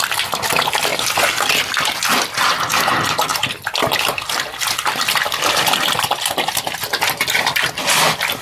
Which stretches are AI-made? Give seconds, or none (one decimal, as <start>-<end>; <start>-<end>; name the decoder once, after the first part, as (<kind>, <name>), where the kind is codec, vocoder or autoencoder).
none